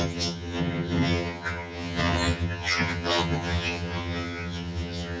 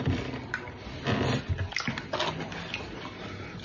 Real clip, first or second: second